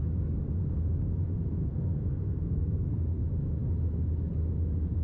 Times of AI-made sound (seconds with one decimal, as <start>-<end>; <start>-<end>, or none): 1.5-3.2